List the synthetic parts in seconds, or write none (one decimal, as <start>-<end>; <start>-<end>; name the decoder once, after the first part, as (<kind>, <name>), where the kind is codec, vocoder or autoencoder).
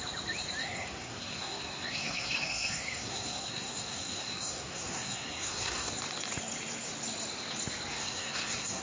0.6-5.9 (codec, SNAC); 7.9-8.8